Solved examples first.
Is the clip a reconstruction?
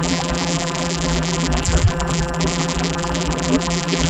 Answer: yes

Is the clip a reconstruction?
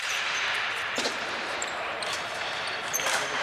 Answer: yes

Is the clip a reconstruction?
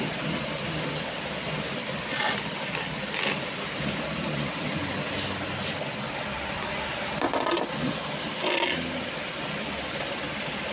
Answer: no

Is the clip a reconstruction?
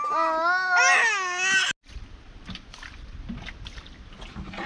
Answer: no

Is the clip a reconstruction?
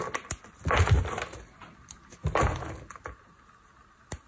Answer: no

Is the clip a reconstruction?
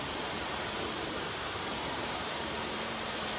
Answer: yes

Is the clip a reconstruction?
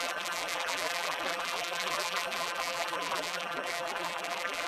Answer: yes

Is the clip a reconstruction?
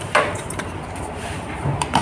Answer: yes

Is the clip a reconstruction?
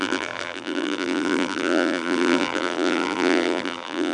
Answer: yes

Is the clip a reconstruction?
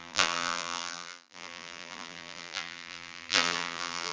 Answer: yes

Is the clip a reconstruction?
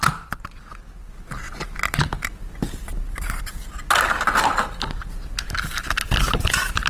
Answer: no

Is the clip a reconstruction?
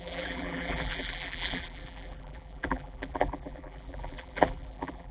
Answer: yes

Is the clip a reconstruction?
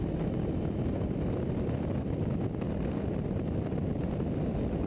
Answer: no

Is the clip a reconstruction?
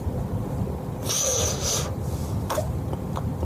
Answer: no